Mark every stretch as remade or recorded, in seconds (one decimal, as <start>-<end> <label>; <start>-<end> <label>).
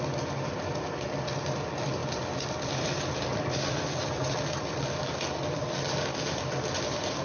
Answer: 0.0-7.2 recorded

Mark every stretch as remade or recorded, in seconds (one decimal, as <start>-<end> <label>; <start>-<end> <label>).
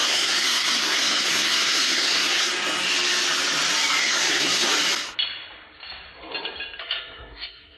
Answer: 0.0-2.5 remade; 2.5-4.0 recorded; 4.0-4.7 remade; 4.7-6.8 recorded; 6.8-7.8 remade